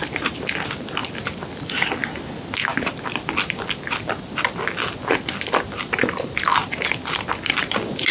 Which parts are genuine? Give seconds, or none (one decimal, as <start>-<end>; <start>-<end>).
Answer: 0.0-8.1